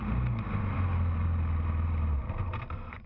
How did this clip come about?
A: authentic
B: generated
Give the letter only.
A